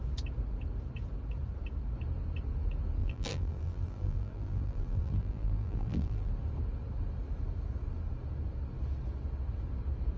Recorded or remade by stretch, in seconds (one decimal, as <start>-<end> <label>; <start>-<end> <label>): 0.0-3.0 recorded; 3.0-6.3 remade; 6.3-10.2 recorded